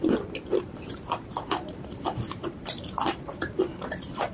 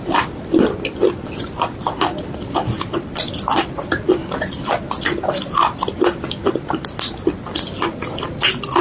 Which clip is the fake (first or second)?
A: first